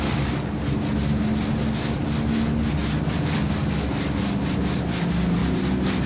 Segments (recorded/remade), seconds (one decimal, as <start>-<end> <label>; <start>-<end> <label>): 0.0-2.8 recorded; 2.8-3.7 remade; 3.7-5.4 recorded; 5.4-6.1 remade